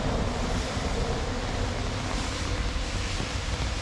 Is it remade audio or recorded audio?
recorded